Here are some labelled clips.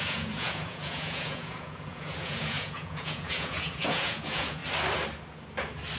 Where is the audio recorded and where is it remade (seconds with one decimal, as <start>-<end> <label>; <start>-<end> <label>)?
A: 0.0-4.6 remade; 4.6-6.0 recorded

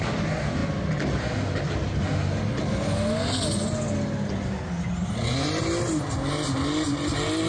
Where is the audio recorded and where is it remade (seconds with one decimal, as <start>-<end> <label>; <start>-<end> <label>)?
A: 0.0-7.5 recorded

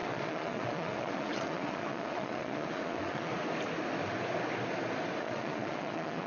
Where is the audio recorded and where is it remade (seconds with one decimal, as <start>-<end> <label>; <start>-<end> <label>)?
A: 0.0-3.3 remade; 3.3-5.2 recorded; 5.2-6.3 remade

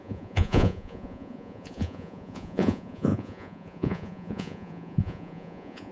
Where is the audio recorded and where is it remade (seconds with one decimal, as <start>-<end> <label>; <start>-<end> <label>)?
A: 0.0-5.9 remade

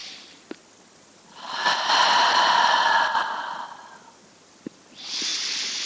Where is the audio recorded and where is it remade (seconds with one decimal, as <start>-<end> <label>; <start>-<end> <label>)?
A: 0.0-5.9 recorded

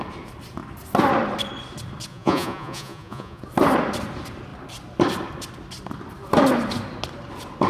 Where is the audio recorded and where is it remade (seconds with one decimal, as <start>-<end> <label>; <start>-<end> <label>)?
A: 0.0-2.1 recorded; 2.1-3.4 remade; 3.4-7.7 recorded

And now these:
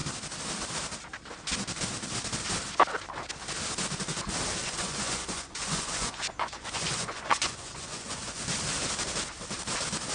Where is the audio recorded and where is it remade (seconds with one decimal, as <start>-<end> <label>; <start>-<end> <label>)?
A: 0.0-4.6 recorded; 4.6-8.4 remade; 8.4-10.1 recorded

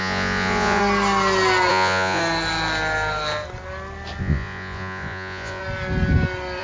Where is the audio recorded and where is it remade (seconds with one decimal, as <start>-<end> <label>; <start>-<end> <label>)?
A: 0.0-0.8 remade; 0.8-1.7 recorded; 1.7-2.2 remade; 2.2-4.2 recorded; 4.2-5.6 remade; 5.6-6.6 recorded